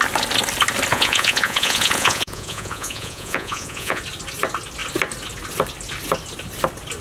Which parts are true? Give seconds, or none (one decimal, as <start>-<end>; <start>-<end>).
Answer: 0.0-0.9; 4.0-7.0